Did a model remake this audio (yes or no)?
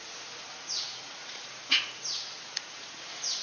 yes